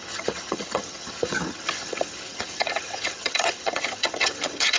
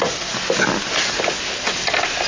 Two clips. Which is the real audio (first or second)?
second